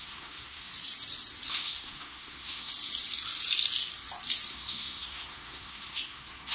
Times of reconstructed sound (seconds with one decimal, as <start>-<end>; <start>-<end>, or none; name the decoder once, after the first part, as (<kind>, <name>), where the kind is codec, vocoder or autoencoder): 0.0-0.7 (codec, SNAC); 1.5-2.7; 4.5-6.5

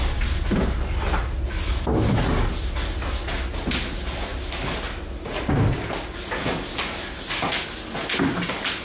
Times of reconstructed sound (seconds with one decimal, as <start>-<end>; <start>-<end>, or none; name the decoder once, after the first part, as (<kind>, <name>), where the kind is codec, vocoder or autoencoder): none